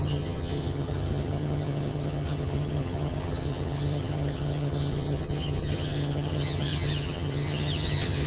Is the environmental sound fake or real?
fake